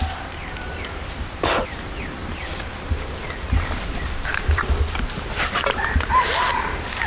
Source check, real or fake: fake